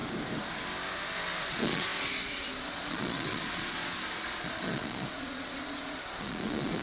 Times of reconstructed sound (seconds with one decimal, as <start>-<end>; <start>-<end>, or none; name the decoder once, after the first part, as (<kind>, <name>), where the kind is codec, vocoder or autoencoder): 1.5-6.8 (vocoder, Vocos)